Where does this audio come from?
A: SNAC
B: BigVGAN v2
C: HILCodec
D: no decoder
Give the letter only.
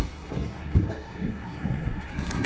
A